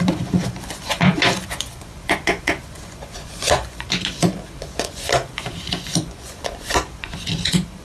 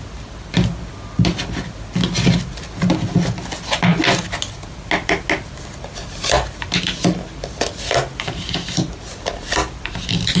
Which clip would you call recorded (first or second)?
second